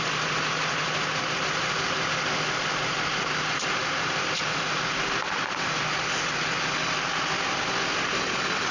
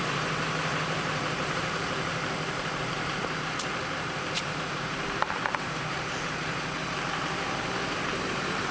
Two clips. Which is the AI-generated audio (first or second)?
second